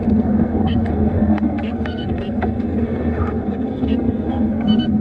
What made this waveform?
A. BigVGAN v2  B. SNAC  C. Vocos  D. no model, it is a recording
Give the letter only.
B